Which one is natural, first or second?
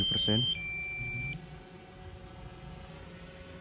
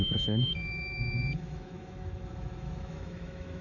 first